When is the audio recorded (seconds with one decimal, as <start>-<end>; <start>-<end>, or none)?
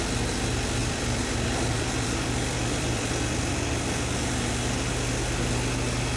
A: 0.0-0.8; 3.5-6.2